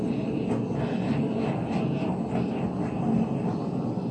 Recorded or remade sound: recorded